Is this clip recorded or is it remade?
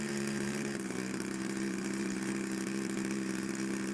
remade